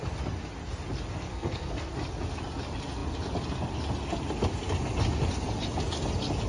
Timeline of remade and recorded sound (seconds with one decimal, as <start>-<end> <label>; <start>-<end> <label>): 0.0-1.3 recorded; 1.3-1.9 remade; 1.9-6.5 recorded